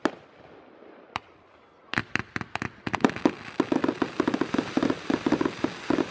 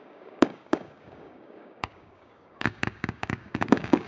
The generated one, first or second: second